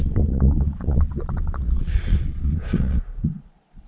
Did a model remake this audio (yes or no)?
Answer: yes